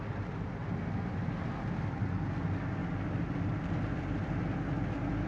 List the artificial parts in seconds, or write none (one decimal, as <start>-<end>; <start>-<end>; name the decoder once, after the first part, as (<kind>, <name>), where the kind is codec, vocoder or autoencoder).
2.8-4.4 (vocoder, BigVGAN v2)